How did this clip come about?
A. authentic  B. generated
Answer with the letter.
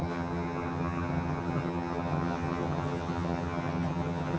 B